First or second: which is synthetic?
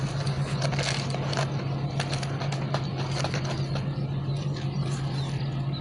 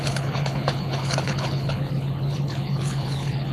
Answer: second